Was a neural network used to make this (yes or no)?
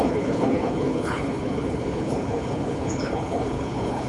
yes